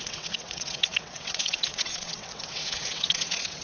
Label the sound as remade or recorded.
remade